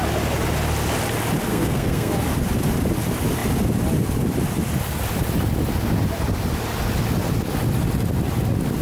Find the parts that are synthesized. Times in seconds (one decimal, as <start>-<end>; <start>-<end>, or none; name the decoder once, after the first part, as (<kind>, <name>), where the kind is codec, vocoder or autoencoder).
1.5-2.1 (codec, SNAC)